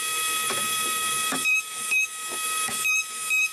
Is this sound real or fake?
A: fake